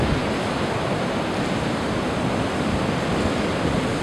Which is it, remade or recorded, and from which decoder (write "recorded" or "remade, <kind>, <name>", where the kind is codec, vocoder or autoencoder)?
recorded